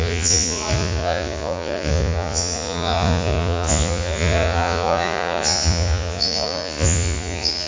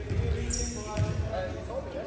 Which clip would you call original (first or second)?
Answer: second